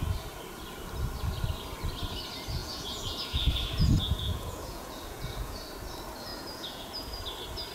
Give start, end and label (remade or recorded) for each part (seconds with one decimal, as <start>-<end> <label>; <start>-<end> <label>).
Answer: 0.0-2.6 recorded; 2.6-5.6 remade; 5.6-6.3 recorded; 6.3-7.2 remade; 7.2-7.7 recorded